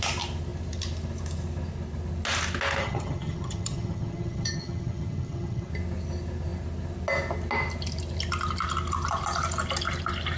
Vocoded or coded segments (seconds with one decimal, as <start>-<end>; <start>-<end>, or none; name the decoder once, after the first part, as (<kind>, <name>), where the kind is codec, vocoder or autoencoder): 2.8-5.7 (vocoder, HiFi-GAN)